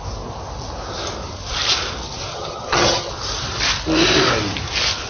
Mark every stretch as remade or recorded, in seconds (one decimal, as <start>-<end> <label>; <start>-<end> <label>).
0.0-2.3 recorded; 2.3-3.1 remade; 3.1-5.1 recorded